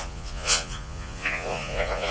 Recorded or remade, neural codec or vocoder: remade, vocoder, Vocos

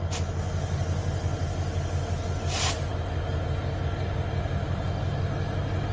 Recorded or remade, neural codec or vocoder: recorded